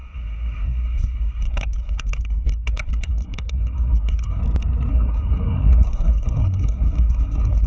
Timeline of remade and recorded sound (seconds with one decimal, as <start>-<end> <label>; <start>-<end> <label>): 0.0-4.4 remade; 4.4-4.9 recorded; 4.9-7.7 remade

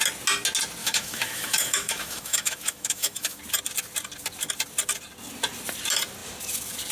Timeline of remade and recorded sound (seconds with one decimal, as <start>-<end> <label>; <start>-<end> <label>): 0.0-0.8 recorded; 0.8-3.4 remade; 3.4-6.9 recorded

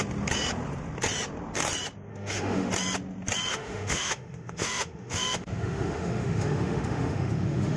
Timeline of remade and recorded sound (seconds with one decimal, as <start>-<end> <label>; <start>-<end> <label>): 0.0-2.1 recorded; 2.1-2.7 remade; 2.7-3.5 recorded; 3.5-7.8 remade

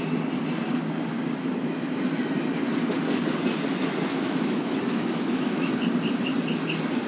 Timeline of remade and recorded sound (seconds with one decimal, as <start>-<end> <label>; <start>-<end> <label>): 0.0-4.1 recorded; 4.1-5.7 remade; 5.7-7.1 recorded